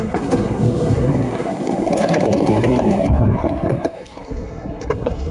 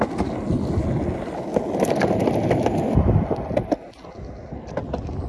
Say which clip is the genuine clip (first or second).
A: second